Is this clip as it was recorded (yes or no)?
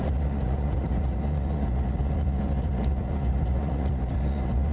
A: no